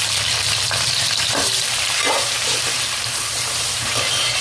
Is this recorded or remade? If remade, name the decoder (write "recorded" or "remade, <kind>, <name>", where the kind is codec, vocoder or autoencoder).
remade, vocoder, BigVGAN v2